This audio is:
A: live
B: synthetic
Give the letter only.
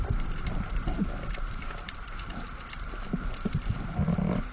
B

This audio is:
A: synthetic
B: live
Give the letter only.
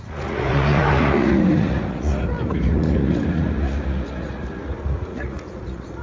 A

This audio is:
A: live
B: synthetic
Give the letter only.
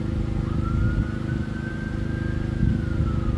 A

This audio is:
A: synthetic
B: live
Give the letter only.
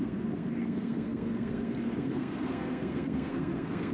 A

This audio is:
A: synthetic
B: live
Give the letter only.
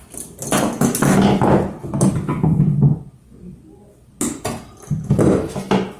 B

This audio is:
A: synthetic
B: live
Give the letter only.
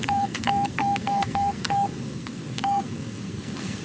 A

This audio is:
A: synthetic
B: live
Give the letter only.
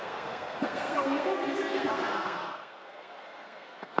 A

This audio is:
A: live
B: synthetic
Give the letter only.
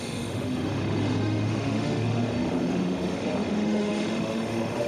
B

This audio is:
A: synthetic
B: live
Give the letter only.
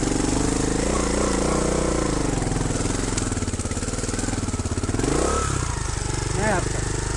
B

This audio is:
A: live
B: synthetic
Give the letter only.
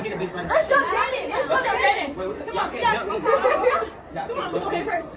B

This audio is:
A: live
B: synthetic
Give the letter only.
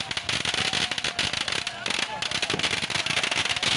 A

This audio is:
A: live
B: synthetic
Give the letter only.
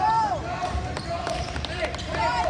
B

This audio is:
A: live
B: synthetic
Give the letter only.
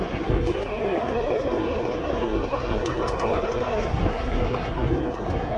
B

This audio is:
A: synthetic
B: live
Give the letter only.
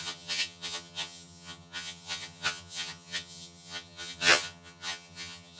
A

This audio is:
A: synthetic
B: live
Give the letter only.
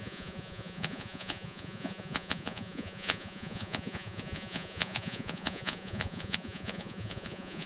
A